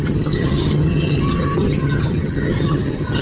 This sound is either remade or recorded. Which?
remade